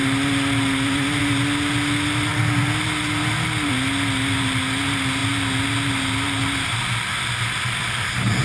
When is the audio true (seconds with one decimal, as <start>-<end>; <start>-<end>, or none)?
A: 0.0-8.4